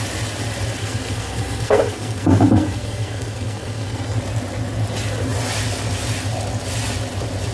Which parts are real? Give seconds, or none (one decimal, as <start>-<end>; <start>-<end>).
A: 0.0-0.8; 4.2-7.5